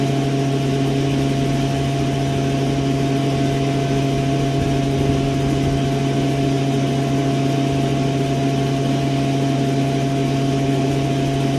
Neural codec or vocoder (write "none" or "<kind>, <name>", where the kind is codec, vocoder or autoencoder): none